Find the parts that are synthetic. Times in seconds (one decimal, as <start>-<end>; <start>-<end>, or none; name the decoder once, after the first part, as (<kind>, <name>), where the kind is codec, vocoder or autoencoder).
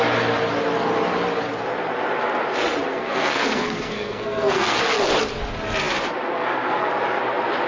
2.9-4.8 (codec, SNAC); 6.3-6.9